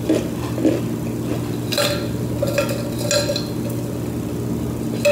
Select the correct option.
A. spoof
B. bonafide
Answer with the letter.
B